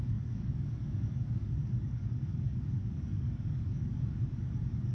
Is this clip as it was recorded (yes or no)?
no